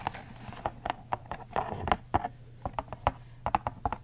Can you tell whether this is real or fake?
real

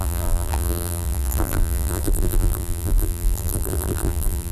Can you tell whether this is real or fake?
fake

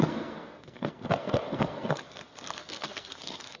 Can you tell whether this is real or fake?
fake